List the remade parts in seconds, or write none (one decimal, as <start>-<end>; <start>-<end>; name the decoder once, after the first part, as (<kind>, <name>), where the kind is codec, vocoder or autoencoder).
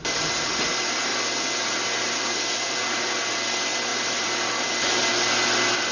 1.1-2.8 (vocoder, BigVGAN v2); 3.9-5.1